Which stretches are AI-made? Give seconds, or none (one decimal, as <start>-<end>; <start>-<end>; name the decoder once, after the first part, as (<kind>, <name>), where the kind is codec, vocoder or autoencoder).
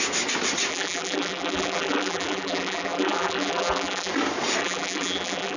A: 0.7-4.1 (vocoder, BigVGAN v2); 4.6-5.6